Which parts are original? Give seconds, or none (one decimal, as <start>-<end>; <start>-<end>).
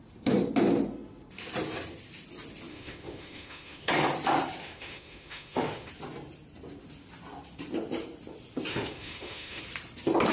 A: 0.0-2.7; 3.9-4.6; 5.9-8.7; 9.6-10.3